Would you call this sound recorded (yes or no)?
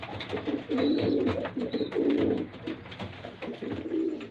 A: no